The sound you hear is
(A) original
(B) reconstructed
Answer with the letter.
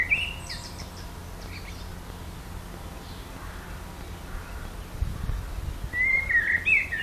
A